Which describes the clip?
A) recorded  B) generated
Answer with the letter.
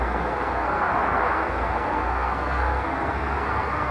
B